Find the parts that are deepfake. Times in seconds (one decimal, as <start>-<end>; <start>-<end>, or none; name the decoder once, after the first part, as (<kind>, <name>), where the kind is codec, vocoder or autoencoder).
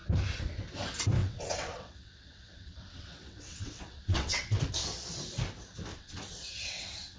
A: 1.2-4.7 (vocoder, WaveNeXt); 5.9-7.2